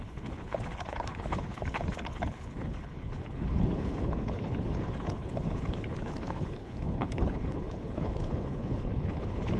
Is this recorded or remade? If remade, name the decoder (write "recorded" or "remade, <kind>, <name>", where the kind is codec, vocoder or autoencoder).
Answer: remade, codec, HILCodec